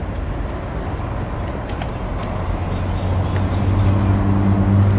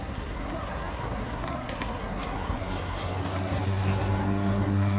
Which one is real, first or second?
first